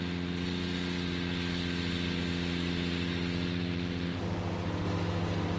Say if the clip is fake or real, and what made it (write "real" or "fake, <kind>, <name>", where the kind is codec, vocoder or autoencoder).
real